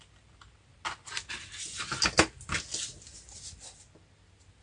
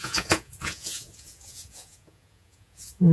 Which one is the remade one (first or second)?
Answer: second